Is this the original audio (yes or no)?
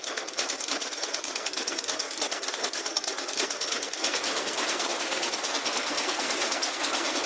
no